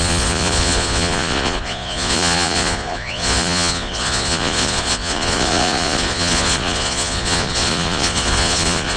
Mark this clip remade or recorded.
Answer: remade